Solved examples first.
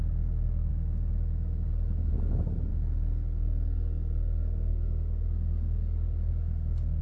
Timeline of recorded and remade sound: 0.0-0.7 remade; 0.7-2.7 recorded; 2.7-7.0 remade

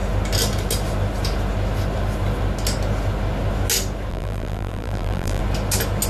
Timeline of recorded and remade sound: 0.0-4.1 recorded; 4.1-5.4 remade; 5.4-6.1 recorded